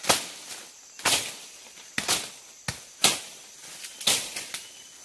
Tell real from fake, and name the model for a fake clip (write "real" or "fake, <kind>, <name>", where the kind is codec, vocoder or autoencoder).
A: real